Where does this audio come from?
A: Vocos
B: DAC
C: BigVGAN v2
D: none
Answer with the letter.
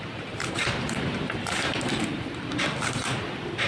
C